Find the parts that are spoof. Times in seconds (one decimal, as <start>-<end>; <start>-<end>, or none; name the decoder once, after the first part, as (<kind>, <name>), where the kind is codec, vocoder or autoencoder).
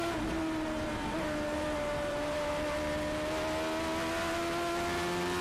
0.0-2.5 (vocoder, BigVGAN v2)